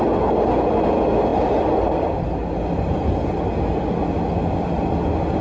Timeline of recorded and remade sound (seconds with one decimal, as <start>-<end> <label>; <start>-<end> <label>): 0.0-5.4 recorded